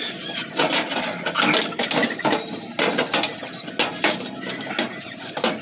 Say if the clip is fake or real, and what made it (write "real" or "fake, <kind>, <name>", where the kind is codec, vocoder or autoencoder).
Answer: real